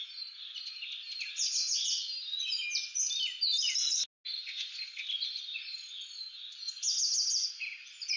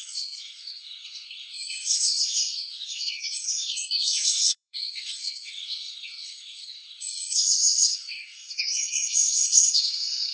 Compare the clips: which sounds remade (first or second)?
second